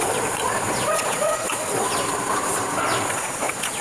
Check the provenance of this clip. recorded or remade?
remade